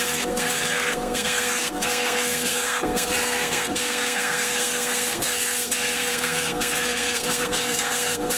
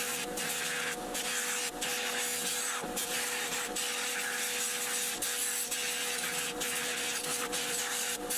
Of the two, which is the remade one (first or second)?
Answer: first